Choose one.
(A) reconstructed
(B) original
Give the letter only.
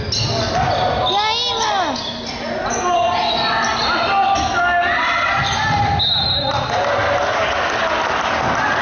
B